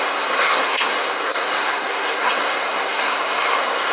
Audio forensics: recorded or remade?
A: remade